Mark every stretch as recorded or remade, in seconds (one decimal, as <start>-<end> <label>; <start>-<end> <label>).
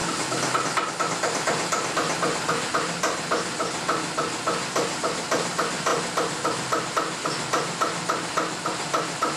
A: 0.0-9.4 recorded